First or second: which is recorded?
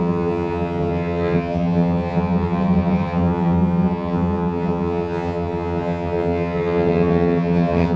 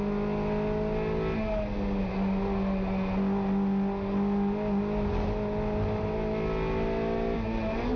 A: second